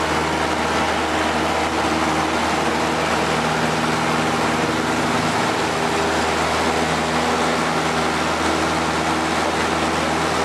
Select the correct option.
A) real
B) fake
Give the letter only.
A